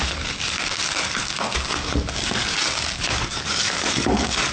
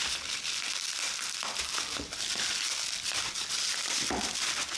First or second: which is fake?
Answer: first